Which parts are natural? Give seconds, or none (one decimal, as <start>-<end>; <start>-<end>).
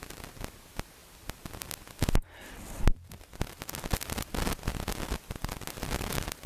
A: 0.0-5.4